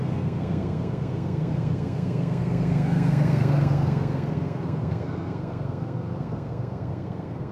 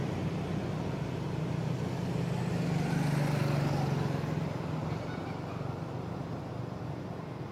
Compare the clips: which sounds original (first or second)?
second